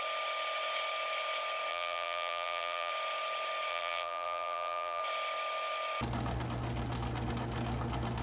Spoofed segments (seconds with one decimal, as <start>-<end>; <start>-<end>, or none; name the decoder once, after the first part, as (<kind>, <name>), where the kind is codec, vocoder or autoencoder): 1.7-2.9 (vocoder, BigVGAN v2); 3.7-5.0

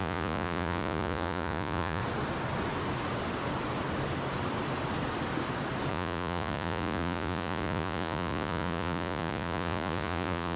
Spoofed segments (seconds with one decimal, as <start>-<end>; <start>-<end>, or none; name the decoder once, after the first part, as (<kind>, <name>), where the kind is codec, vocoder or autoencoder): 0.0-2.0 (vocoder, Vocos); 5.9-10.6

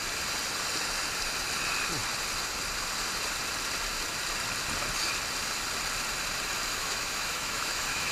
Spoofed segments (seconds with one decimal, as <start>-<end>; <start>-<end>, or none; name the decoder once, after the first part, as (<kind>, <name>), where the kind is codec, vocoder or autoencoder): 6.8-8.1 (autoencoder, DAC-VAE)